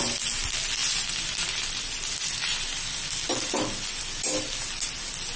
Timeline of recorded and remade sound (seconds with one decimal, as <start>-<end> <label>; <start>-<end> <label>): 0.0-5.4 recorded